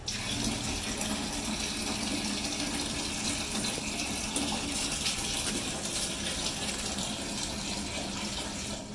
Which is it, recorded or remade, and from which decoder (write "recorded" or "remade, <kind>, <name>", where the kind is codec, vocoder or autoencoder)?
recorded